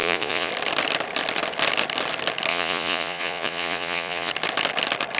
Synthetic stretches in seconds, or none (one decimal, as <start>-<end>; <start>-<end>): 0.0-0.5; 2.5-4.3